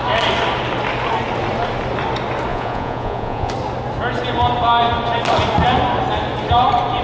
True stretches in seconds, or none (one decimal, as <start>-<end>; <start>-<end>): 0.0-2.5; 3.5-7.0